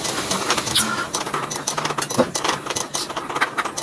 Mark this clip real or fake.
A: real